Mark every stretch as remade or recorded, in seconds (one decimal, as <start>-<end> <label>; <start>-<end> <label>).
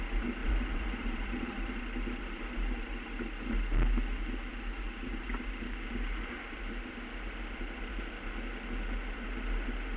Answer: 0.0-0.4 recorded; 0.4-1.8 remade; 1.8-10.0 recorded